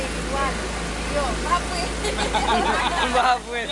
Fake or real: real